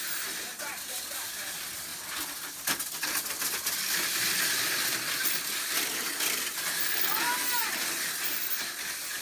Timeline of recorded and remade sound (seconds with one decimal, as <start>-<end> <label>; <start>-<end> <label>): 0.0-9.2 recorded